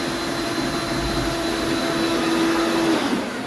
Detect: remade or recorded recorded